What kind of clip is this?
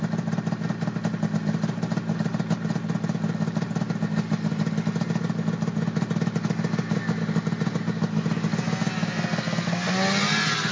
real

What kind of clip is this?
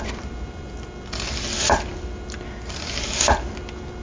real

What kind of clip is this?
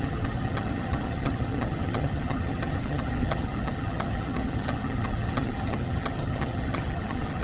fake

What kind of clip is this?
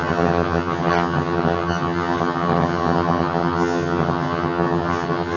fake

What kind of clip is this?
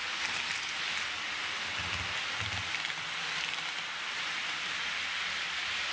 real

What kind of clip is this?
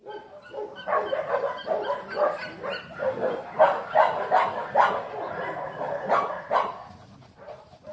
real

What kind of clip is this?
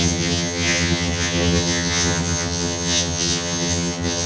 fake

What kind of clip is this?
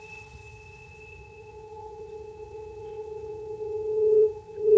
fake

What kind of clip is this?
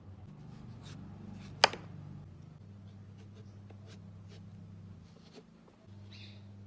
real